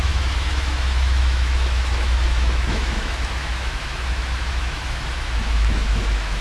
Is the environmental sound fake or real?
fake